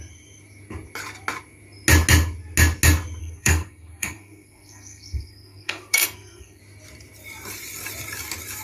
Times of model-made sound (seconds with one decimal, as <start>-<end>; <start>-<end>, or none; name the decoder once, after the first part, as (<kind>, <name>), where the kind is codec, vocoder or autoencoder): 3.2-6.6 (codec, SNAC)